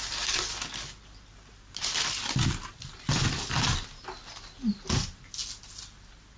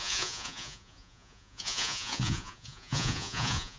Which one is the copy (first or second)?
second